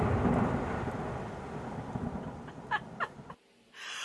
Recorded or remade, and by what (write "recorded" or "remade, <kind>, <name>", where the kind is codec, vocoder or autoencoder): recorded